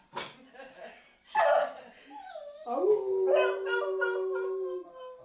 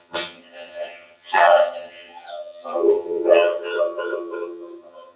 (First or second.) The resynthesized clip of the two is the second